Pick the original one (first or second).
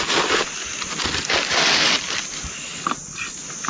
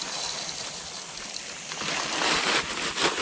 first